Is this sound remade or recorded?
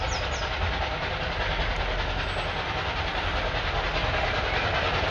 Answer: recorded